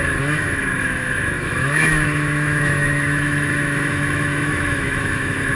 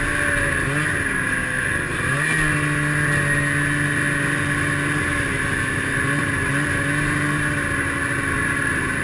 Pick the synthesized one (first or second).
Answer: first